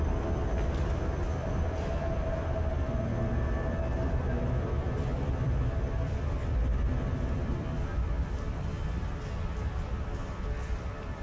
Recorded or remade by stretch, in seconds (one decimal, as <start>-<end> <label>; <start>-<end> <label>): 0.0-2.6 remade; 2.6-4.0 recorded; 4.0-11.2 remade